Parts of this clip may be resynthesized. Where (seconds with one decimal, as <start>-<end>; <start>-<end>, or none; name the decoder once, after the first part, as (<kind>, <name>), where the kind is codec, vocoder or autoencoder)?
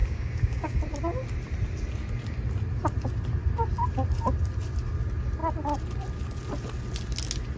0.0-0.8 (codec, DAC)